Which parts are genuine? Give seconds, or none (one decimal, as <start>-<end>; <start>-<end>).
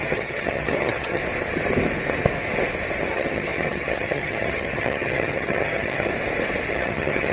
1.2-3.1; 6.1-6.7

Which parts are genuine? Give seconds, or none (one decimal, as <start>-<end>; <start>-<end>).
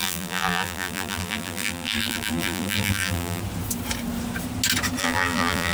3.4-5.0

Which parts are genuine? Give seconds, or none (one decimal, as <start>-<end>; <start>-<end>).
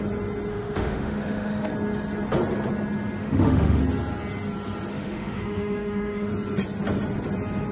0.0-0.5; 1.7-3.2; 3.8-4.9; 6.3-7.7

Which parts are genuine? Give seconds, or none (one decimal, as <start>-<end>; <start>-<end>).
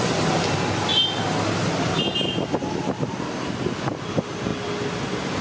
0.0-5.4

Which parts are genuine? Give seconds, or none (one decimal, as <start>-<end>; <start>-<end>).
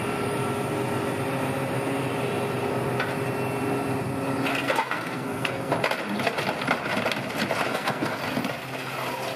0.0-4.5; 5.7-7.7; 8.2-9.4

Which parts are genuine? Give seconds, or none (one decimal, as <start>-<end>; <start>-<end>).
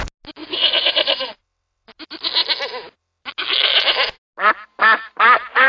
0.0-0.4; 2.0-5.7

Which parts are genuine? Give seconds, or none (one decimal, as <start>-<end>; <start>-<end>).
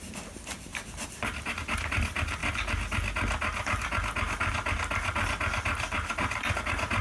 0.0-0.7; 1.6-7.0